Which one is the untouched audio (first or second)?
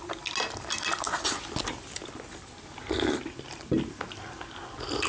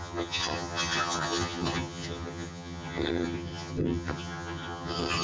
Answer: first